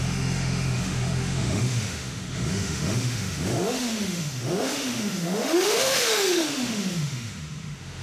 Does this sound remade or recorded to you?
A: remade